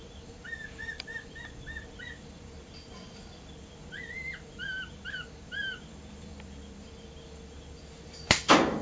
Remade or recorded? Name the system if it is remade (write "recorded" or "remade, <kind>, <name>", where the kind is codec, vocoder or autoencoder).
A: remade, vocoder, BigVGAN v2